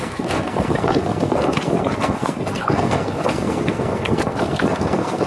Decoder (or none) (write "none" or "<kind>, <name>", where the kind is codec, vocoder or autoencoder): codec, SNAC